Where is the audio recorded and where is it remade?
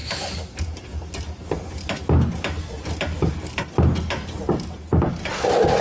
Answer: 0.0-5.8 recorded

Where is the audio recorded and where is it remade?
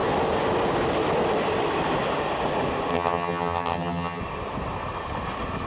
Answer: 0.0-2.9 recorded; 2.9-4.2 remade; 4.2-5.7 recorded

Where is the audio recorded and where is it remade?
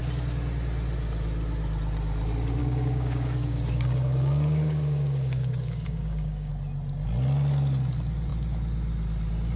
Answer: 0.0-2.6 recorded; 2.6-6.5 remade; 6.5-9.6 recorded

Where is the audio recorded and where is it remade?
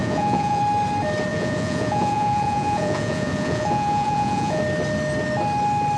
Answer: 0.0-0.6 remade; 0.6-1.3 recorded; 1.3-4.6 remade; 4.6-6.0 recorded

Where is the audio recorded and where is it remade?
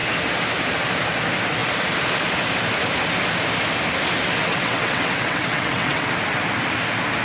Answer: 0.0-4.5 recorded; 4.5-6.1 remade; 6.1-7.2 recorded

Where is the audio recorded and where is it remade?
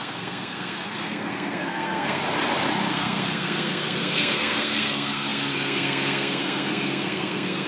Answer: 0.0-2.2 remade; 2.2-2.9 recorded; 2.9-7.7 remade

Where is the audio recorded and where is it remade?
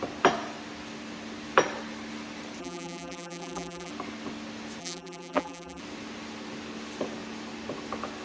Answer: 0.0-2.6 recorded; 2.6-3.9 remade; 3.9-4.8 recorded; 4.8-5.8 remade; 5.8-8.2 recorded